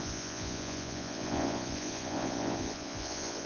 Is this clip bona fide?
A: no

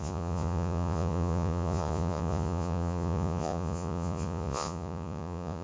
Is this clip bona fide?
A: no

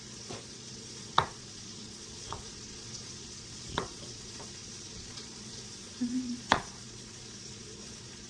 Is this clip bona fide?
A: no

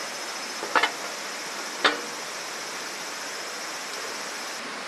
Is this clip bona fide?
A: yes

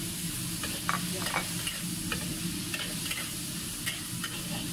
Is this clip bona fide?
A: yes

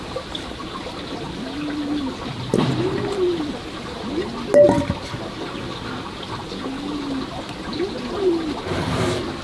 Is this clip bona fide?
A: yes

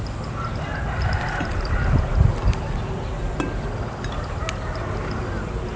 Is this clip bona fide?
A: yes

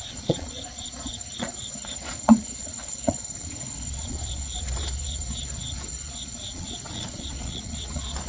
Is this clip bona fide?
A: no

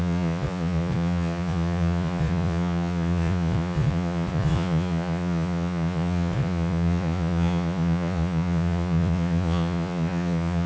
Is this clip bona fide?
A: no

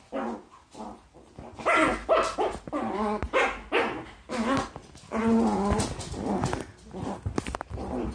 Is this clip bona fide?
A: yes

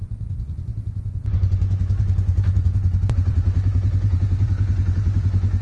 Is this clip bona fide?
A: no